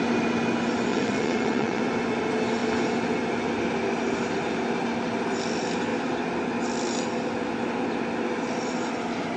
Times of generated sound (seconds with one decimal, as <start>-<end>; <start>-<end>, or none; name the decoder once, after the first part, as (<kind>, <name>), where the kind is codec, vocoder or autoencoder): 0.9-1.8 (vocoder, WaveNeXt)